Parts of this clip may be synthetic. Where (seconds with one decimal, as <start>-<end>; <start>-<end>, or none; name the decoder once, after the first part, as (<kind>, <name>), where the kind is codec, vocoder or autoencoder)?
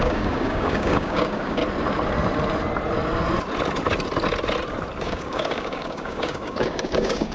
0.0-1.6 (codec, DAC); 5.0-7.3